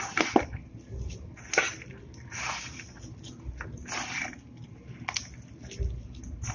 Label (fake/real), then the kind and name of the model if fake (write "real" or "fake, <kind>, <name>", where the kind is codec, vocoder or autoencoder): real